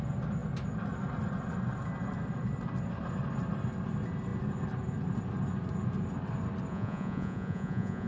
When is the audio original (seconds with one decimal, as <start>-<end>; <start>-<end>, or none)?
0.0-6.7